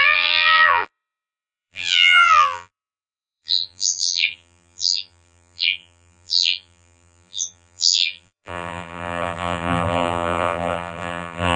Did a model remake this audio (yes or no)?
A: yes